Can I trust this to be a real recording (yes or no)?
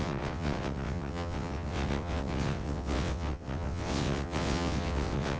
no